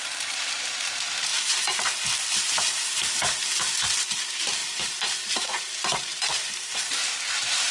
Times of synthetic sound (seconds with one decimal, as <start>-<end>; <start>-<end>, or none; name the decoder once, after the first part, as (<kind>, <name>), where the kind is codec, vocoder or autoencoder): 0.0-7.7 (vocoder, BigVGAN v2)